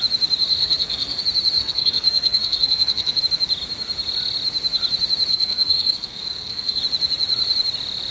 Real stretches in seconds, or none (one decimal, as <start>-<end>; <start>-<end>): 0.0-0.6; 1.2-1.6; 3.2-5.3; 6.8-8.1